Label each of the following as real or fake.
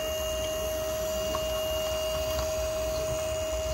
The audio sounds real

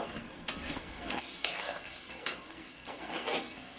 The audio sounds fake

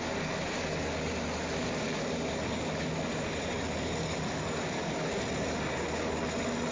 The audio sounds real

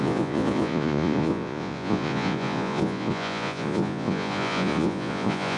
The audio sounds fake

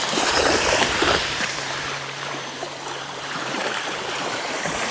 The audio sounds fake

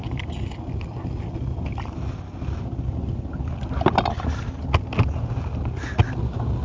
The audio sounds real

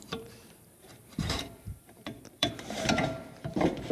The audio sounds fake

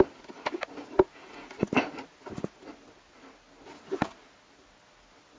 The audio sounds real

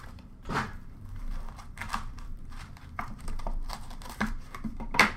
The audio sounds fake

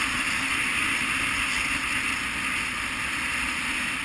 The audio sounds real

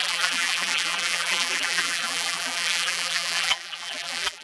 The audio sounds fake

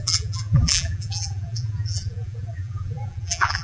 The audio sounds fake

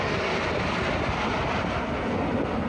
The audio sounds real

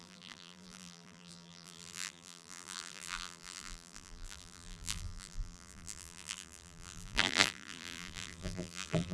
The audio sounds fake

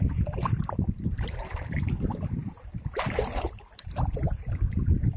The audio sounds fake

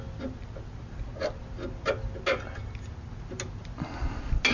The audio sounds real